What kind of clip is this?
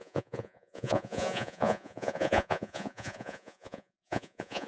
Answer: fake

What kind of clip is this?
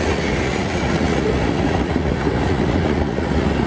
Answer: fake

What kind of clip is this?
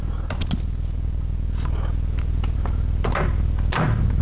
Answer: real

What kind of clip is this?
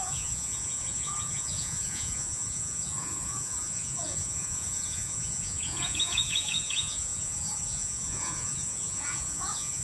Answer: fake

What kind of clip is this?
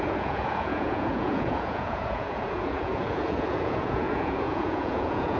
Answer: fake